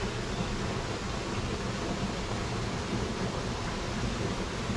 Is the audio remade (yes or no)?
no